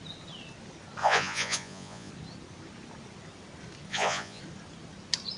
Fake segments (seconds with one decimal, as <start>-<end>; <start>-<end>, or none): 1.0-2.1; 3.9-4.4